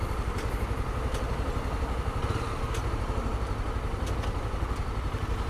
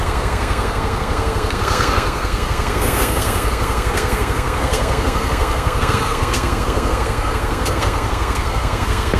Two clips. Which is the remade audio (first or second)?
second